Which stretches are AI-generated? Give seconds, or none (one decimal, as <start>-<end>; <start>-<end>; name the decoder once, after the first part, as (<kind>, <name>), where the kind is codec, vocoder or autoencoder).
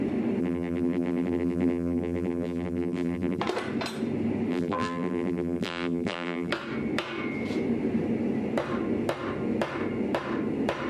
0.4-3.4 (vocoder, BigVGAN v2); 4.5-6.5